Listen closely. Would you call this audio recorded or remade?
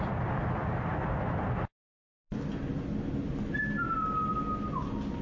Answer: recorded